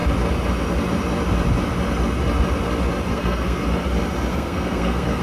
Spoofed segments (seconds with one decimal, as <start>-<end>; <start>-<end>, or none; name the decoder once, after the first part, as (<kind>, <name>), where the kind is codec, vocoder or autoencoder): 3.1-3.6 (codec, SNAC); 4.3-5.2